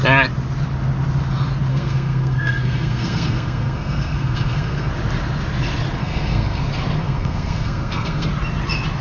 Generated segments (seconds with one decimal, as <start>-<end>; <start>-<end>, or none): 1.7-4.9; 6.0-6.6; 7.0-8.3